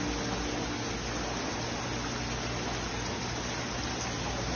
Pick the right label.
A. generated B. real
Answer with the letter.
B